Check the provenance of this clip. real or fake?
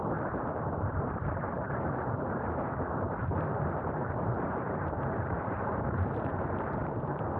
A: fake